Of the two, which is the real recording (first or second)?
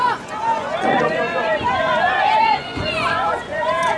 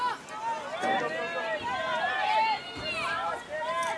second